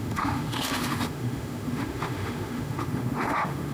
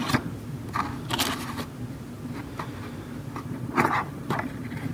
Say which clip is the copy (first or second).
first